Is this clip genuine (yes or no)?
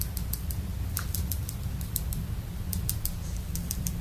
yes